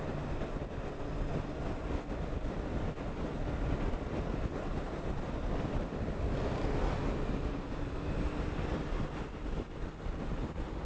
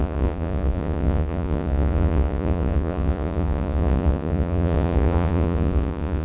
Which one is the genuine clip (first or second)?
first